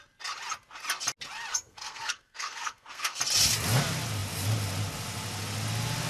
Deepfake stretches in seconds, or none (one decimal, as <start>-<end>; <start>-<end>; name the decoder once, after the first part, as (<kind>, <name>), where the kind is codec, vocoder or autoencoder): 1.5-3.2 (codec, SNAC)